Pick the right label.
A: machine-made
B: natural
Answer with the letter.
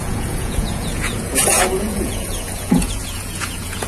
A